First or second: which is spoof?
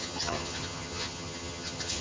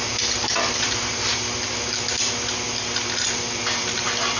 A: first